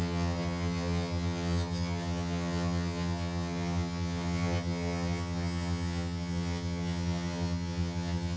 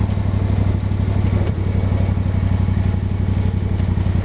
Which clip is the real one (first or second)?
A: second